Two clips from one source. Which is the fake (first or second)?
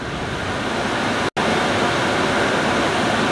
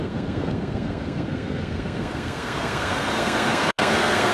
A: second